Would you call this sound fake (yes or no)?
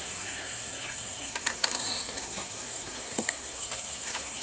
yes